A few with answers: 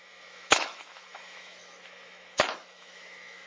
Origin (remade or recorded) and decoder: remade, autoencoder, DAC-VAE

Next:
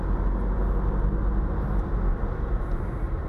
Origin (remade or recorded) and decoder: recorded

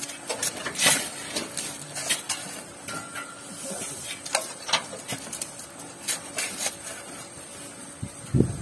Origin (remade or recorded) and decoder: recorded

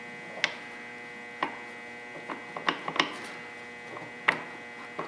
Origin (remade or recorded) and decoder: recorded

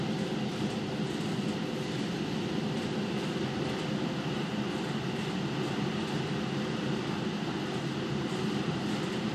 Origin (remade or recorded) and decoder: recorded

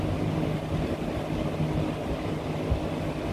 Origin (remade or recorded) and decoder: recorded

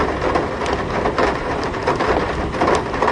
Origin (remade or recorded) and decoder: recorded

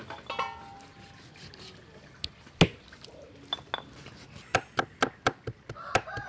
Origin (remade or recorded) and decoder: recorded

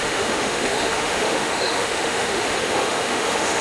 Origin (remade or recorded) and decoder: remade, autoencoder, DAC-VAE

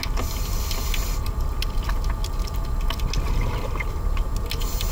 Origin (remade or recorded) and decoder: recorded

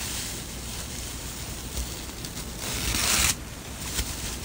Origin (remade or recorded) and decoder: recorded